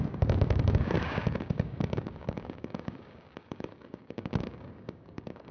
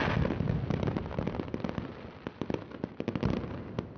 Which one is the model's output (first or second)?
first